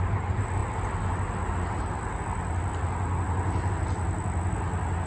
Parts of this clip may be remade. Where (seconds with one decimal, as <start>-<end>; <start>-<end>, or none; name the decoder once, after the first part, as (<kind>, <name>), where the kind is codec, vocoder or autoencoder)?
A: none